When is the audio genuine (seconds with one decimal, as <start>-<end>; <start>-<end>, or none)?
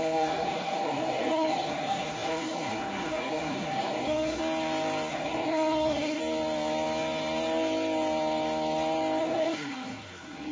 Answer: 4.4-5.1; 6.2-9.2